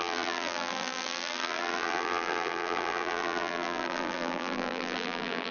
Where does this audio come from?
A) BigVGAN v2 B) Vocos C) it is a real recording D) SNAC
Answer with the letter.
A